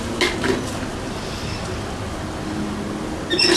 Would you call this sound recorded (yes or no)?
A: yes